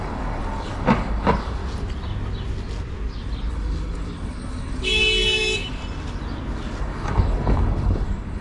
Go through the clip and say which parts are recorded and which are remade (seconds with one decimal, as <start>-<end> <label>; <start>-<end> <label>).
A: 0.0-1.6 remade; 1.6-3.5 recorded; 3.5-5.8 remade; 5.8-6.8 recorded; 6.8-8.4 remade